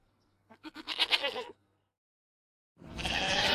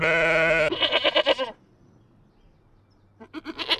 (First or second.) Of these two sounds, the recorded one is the second